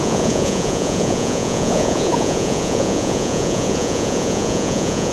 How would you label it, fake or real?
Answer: fake